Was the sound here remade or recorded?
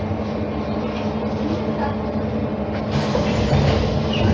recorded